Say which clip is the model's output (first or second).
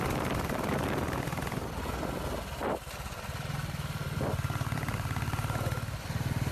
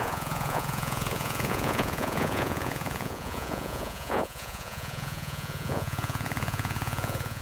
second